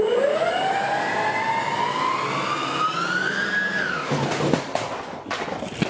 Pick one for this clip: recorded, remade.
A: recorded